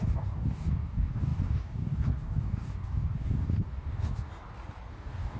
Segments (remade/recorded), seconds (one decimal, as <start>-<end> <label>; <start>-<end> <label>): 0.0-4.3 remade; 4.3-4.9 recorded; 4.9-5.4 remade